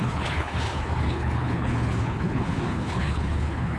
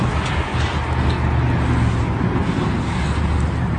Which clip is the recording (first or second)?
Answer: second